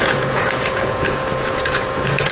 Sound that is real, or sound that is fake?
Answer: fake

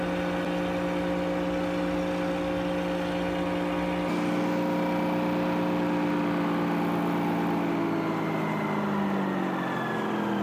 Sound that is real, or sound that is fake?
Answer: real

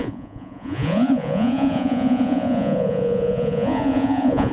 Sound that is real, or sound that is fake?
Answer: fake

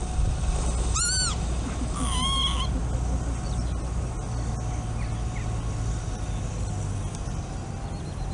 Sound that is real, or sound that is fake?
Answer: real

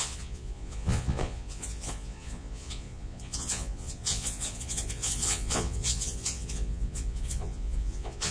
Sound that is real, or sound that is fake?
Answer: fake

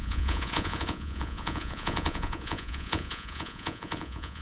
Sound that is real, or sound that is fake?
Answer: fake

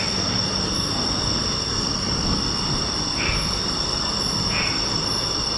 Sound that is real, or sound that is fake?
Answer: real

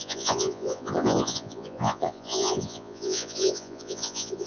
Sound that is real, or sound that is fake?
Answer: fake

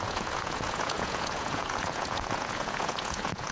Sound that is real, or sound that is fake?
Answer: fake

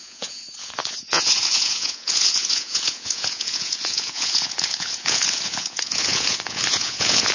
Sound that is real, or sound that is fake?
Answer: fake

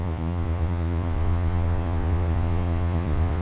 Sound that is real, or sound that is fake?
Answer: fake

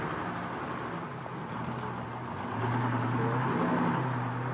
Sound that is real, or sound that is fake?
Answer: real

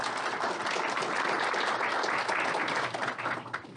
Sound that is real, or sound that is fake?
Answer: real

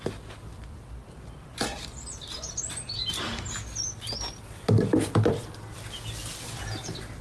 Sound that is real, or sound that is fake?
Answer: real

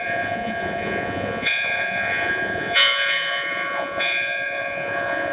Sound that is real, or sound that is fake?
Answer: fake